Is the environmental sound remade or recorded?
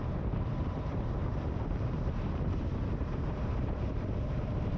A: remade